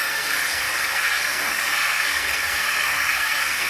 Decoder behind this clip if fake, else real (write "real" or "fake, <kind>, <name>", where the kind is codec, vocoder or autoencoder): fake, codec, SNAC